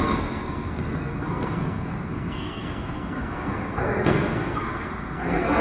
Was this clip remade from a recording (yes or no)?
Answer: yes